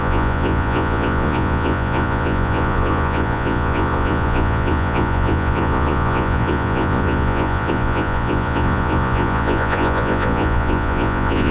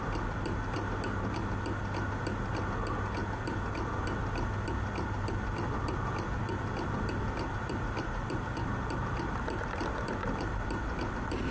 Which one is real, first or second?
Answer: second